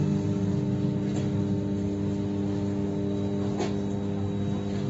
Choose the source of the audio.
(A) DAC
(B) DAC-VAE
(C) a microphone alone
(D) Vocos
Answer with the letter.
C